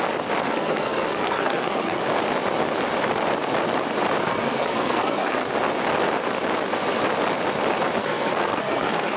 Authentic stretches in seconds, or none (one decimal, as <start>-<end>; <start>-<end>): 0.0-0.4; 2.0-4.2; 5.4-8.0